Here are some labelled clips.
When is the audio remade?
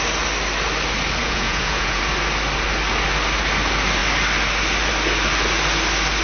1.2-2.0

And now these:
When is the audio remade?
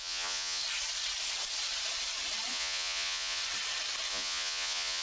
0.0-0.6; 2.5-3.4; 4.1-5.0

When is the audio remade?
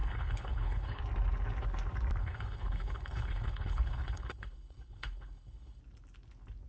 0.0-1.0; 2.2-5.8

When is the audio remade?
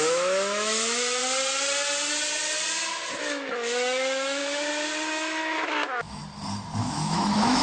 0.0-1.2; 3.2-4.4; 5.1-6.2; 6.8-7.6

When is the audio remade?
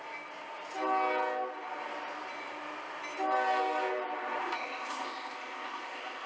4.4-6.3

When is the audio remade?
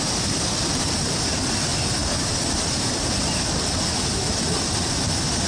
0.0-1.7; 3.3-5.5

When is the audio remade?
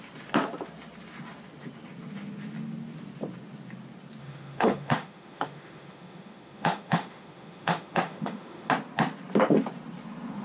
4.2-8.7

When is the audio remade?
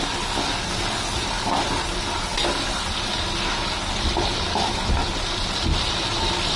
none